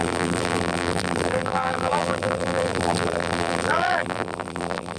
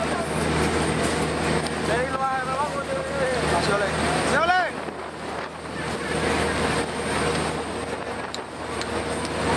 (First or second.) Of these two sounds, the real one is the second